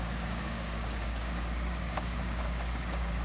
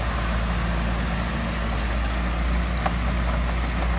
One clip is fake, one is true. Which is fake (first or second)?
first